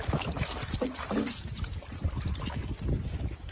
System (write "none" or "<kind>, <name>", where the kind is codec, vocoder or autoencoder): none